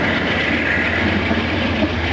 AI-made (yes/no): no